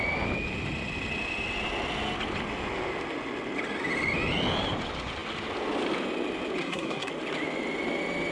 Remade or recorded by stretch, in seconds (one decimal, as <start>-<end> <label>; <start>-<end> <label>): 0.0-6.6 recorded; 6.6-7.1 remade; 7.1-8.3 recorded